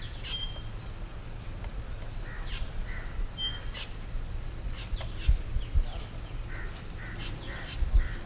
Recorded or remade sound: recorded